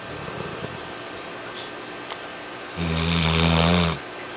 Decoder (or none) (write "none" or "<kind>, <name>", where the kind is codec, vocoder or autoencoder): none